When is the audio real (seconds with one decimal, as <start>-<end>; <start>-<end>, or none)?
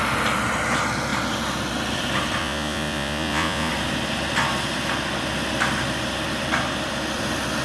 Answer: 0.0-2.4; 3.7-7.6